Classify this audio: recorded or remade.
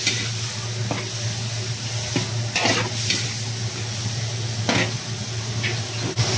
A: recorded